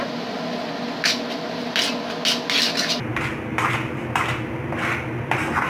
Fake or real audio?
real